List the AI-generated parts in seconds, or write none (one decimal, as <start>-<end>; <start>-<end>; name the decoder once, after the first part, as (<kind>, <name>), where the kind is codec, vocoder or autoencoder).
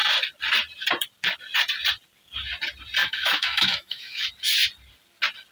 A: 3.0-4.3 (autoencoder, DAC-VAE)